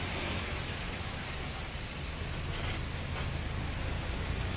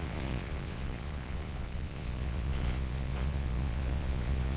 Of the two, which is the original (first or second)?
first